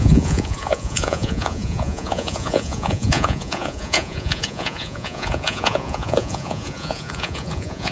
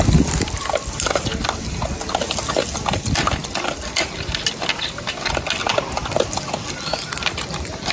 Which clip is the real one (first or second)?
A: second